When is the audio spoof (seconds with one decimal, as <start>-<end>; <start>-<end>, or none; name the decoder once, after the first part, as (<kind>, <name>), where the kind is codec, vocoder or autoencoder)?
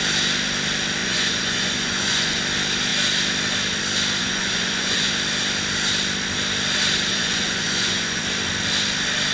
1.0-2.4 (vocoder, Vocos); 4.2-5.1; 7.1-8.2